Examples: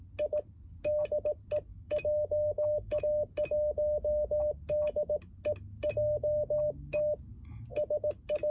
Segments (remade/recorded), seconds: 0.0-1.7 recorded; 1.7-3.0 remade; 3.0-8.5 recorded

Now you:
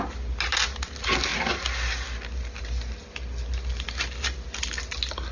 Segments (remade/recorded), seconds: 0.0-5.3 recorded